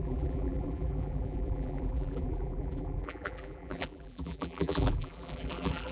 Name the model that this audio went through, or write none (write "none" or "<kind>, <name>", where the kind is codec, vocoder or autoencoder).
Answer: vocoder, BigVGAN v2